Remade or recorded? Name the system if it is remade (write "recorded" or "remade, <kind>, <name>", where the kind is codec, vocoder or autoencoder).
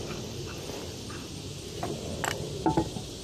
recorded